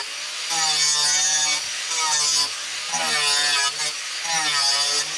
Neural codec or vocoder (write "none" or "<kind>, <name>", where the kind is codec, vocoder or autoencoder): none